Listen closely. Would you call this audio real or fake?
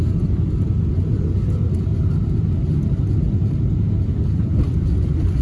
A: real